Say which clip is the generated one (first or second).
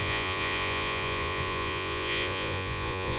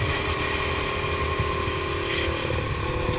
first